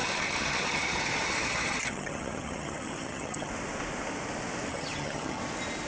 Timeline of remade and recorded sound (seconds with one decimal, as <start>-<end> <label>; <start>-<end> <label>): 0.0-3.5 remade; 3.5-4.7 recorded; 4.7-5.4 remade; 5.4-5.9 recorded